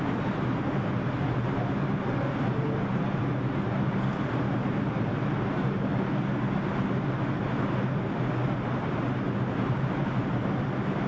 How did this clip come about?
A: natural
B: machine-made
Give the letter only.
A